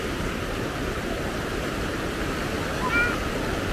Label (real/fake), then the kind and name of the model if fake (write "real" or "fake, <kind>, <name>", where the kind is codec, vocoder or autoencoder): real